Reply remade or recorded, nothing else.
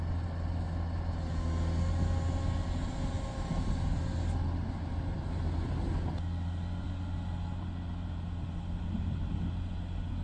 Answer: recorded